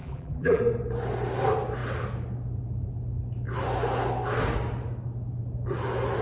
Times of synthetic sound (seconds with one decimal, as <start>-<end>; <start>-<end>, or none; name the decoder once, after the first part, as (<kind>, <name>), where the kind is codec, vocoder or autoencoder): 0.0-0.6 (vocoder, BigVGAN v2)